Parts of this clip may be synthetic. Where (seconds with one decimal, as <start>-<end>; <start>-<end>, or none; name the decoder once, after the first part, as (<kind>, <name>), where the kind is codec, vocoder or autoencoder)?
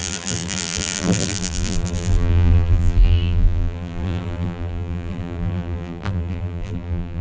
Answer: 0.0-7.2 (vocoder, BigVGAN v2)